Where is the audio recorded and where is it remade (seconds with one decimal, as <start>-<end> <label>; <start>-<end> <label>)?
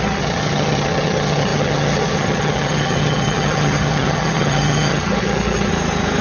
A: 0.0-5.7 remade; 5.7-6.2 recorded